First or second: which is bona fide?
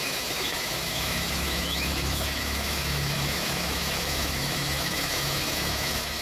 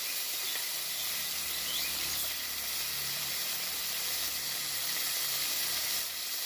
second